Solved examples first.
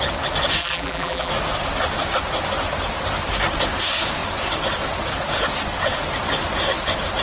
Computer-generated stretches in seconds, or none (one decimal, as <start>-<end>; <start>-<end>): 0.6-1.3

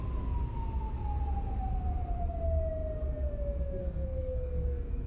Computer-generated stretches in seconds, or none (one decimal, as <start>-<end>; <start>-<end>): 3.8-5.1

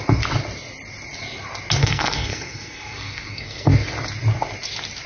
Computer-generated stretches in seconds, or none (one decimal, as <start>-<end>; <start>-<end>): 1.8-3.7

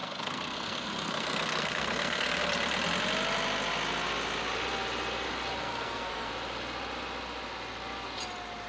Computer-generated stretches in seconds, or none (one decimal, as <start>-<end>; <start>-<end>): 0.0-2.4; 5.6-6.3

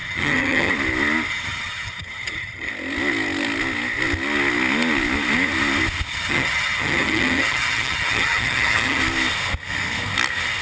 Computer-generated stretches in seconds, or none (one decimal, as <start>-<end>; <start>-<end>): 0.0-0.7; 1.3-2.7; 6.1-9.0

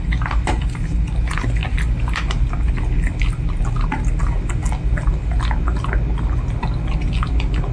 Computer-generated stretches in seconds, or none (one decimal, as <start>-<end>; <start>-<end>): none

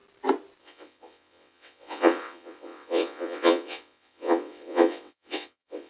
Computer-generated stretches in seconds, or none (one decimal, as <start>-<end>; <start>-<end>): 0.6-5.9